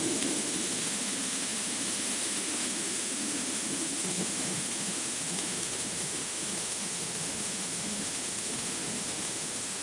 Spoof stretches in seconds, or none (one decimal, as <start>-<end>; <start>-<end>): 0.0-9.8

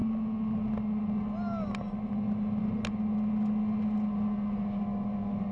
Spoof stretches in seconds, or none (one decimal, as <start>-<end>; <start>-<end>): none

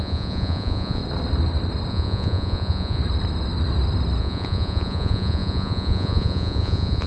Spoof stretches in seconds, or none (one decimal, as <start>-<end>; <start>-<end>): 0.0-1.0; 1.9-3.0; 4.2-7.1

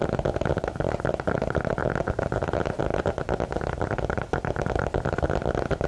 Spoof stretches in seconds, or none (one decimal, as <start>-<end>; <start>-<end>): none